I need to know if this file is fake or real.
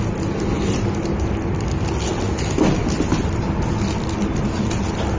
real